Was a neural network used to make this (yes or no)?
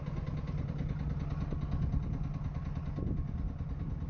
no